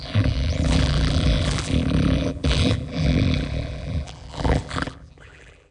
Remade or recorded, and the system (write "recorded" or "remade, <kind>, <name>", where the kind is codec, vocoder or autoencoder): remade, vocoder, BigVGAN v2